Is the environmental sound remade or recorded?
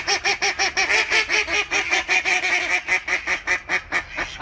recorded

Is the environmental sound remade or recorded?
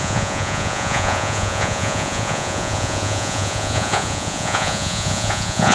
remade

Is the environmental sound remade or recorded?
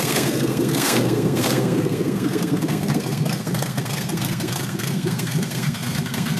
remade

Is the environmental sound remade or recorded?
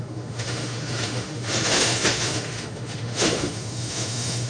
remade